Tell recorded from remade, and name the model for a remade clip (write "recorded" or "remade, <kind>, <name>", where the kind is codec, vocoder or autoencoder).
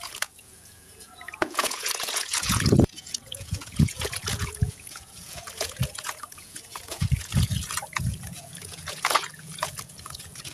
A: remade, vocoder, Vocos